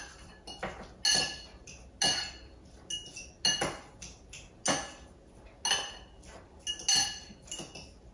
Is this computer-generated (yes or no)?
no